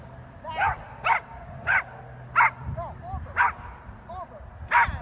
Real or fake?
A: real